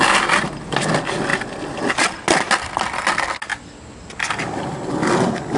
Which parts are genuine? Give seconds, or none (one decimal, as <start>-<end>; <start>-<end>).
0.0-5.6